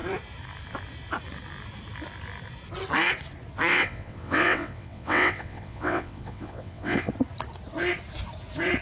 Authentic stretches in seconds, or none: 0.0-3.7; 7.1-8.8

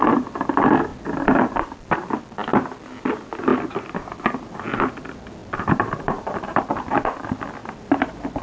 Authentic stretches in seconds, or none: 0.0-0.9; 2.5-3.5; 4.1-5.4; 6.7-7.6

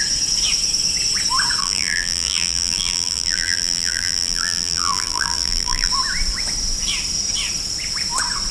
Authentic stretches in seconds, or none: 0.0-1.6; 5.9-8.5